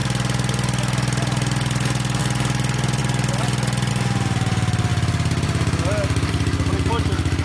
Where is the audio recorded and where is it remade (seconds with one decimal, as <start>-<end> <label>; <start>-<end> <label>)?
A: 0.0-7.4 recorded